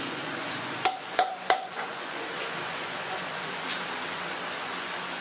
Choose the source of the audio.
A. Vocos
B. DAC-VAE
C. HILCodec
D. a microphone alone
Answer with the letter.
A